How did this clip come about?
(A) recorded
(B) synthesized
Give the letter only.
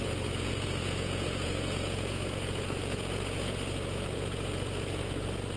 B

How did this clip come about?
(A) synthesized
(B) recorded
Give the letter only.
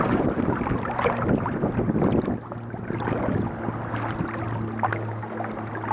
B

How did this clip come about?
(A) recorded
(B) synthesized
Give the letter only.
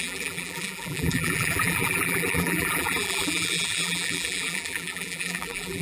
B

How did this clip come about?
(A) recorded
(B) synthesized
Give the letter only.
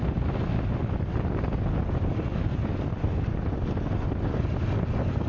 A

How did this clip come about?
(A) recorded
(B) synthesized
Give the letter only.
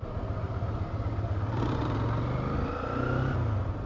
A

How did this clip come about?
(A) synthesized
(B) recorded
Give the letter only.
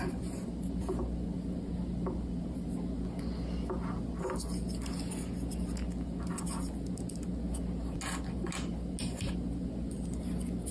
B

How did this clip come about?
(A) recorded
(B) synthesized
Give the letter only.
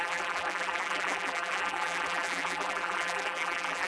B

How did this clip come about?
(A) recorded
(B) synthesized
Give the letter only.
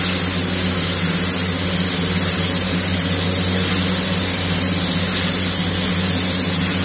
A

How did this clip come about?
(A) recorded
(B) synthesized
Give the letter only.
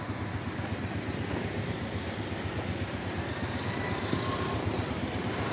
A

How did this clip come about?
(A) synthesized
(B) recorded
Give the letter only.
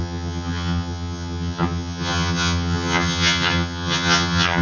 A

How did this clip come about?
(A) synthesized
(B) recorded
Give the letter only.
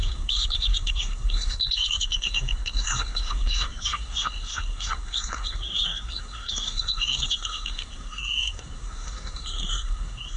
A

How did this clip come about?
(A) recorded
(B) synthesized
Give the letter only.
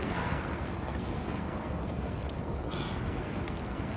B